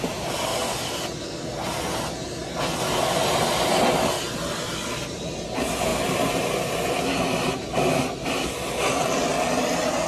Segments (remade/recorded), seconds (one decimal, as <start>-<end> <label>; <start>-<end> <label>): 0.0-10.1 recorded